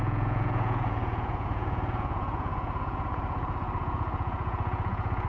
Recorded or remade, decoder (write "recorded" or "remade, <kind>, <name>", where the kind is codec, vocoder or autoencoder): remade, vocoder, Vocos